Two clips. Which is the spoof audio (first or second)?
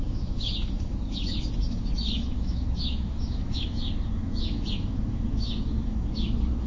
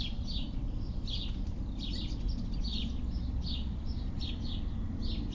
first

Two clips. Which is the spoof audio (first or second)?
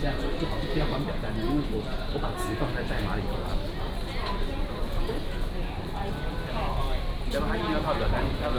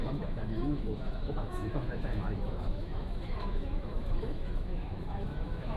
second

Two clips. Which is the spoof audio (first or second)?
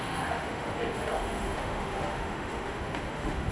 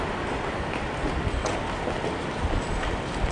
first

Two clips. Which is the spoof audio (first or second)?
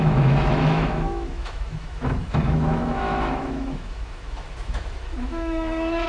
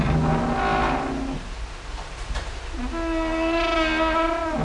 first